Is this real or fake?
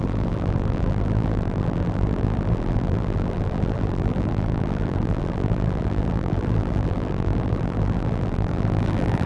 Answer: fake